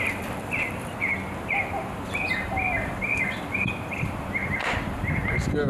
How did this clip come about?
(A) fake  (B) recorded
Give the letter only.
B